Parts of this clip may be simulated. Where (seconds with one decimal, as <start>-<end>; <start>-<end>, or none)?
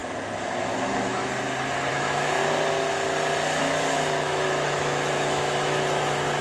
0.6-1.2; 1.9-2.4; 3.6-6.4